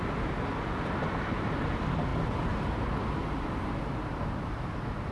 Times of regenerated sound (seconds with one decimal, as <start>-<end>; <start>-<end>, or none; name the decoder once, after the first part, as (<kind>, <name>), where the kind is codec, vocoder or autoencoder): none